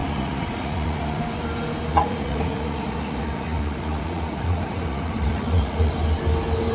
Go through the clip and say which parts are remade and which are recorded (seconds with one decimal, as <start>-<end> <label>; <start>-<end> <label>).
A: 0.0-1.2 remade; 1.2-1.9 recorded; 1.9-5.9 remade; 5.9-6.7 recorded